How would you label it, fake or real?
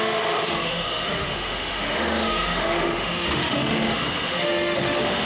fake